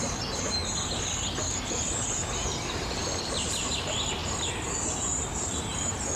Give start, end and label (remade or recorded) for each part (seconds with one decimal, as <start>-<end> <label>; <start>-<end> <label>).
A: 0.0-0.6 remade; 0.6-1.4 recorded; 1.4-4.2 remade; 4.2-5.3 recorded; 5.3-6.2 remade